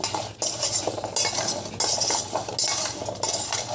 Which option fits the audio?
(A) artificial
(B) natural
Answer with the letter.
B